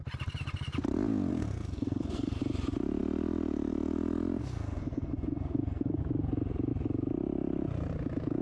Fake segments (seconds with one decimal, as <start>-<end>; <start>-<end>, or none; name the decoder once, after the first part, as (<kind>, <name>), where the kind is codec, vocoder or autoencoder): 1.3-2.4 (codec, SNAC); 4.4-6.0